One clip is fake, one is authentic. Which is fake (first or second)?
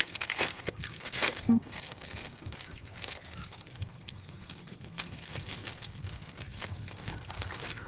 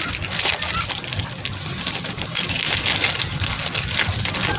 first